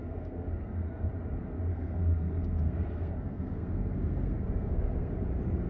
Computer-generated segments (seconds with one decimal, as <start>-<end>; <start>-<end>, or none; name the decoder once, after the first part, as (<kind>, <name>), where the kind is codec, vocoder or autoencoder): 0.0-1.1 (codec, SNAC); 1.7-5.1